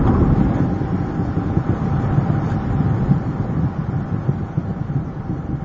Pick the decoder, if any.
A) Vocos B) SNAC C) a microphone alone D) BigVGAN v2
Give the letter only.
C